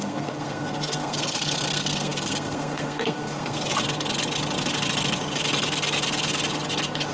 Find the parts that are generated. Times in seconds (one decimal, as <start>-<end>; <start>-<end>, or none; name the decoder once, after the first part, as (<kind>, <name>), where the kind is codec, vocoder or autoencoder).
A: 0.0-3.7 (codec, SNAC)